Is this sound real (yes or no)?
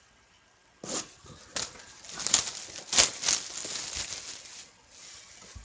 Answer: yes